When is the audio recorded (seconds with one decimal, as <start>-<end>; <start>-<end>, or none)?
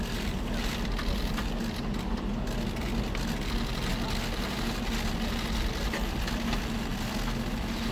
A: 0.0-7.9